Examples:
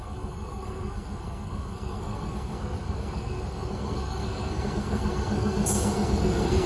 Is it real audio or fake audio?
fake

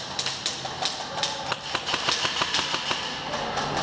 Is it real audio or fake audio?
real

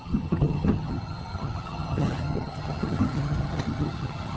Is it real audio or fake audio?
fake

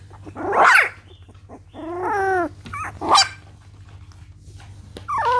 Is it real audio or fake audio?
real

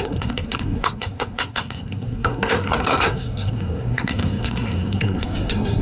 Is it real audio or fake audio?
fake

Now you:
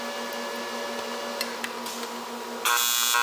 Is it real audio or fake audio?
real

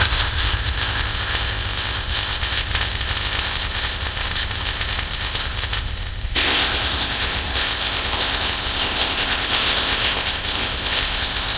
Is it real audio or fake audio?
fake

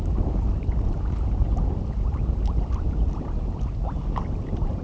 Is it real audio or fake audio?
real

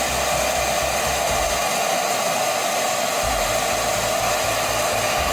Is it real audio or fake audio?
real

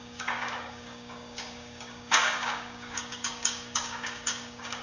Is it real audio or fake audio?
fake